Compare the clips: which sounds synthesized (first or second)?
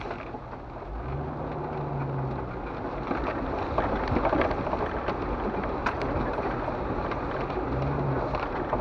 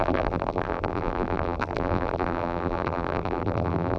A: second